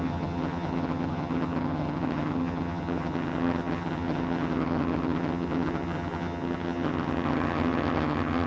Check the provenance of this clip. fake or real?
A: fake